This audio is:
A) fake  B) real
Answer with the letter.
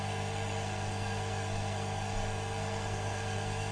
A